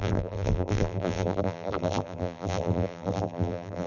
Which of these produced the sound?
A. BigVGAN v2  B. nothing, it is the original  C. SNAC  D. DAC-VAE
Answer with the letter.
A